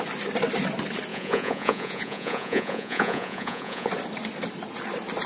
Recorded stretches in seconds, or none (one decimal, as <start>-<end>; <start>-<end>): 0.0-1.1; 3.9-5.3